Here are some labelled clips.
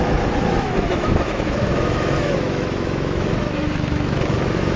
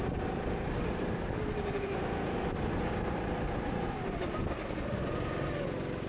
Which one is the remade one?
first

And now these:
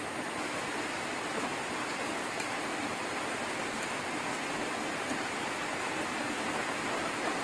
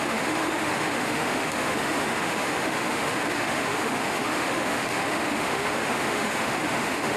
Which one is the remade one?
second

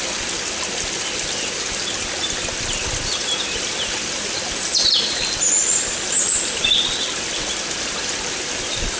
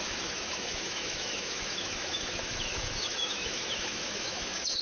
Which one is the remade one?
second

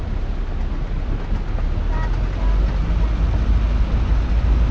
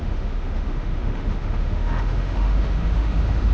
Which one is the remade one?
second